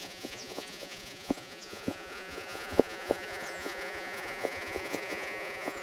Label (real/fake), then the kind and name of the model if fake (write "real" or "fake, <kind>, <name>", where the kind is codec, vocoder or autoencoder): fake, vocoder, Vocos